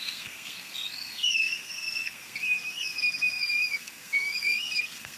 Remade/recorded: remade